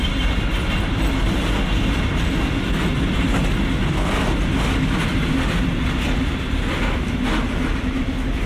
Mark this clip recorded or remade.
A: recorded